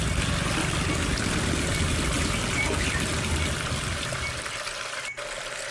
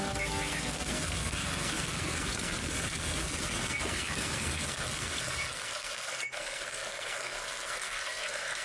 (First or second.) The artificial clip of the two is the second